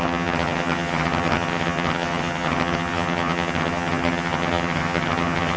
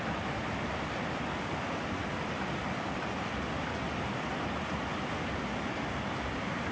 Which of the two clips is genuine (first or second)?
second